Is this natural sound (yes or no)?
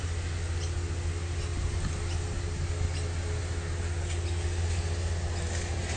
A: yes